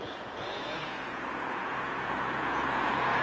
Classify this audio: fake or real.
fake